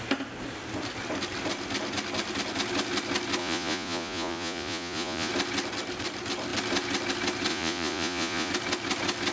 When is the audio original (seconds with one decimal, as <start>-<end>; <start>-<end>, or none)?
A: 0.0-3.4; 5.3-7.5; 8.5-9.3